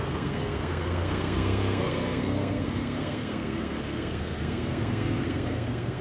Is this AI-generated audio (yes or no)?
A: yes